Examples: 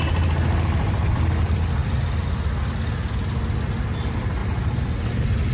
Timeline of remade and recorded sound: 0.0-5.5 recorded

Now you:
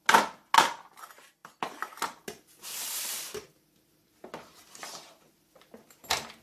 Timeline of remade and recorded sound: 0.0-6.4 recorded

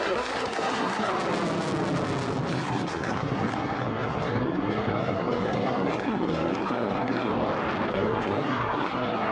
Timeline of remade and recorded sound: 0.0-1.1 remade; 1.1-2.5 recorded; 2.5-7.3 remade; 7.3-7.9 recorded; 7.9-9.3 remade

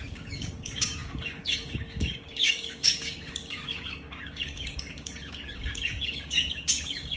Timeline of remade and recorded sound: 0.0-7.2 remade

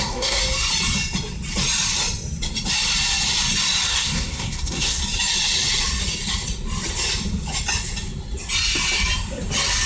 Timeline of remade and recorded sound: 0.0-0.4 remade; 0.4-3.9 recorded; 3.9-5.0 remade; 5.0-9.9 recorded